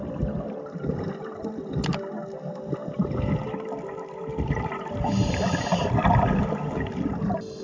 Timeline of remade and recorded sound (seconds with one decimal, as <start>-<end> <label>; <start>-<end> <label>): 0.0-7.6 recorded